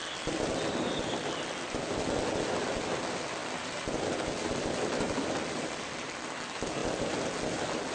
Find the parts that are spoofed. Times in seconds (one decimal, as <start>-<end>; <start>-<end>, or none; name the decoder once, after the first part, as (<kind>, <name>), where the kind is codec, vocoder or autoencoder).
none